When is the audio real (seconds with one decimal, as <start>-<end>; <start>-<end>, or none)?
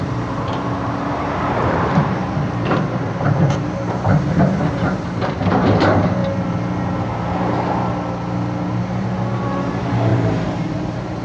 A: 6.2-9.0